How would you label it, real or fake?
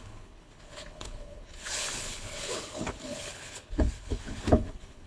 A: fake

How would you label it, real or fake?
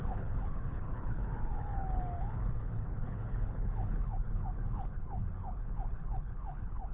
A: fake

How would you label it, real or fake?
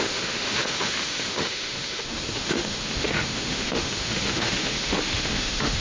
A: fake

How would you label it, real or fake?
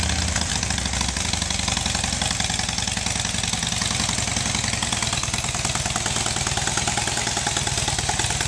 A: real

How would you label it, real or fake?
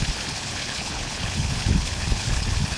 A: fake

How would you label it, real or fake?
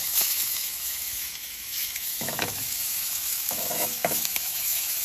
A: fake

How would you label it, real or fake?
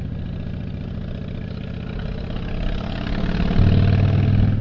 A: real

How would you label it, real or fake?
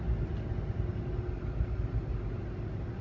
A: real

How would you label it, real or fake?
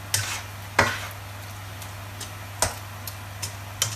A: real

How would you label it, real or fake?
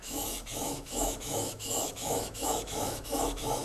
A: fake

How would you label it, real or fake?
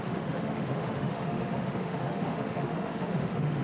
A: fake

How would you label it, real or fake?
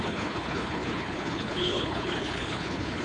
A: fake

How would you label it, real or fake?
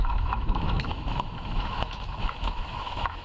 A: fake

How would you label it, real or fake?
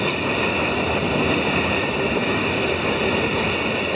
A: real